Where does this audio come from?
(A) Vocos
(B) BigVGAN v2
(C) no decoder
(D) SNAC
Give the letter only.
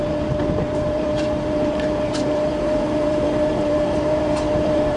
B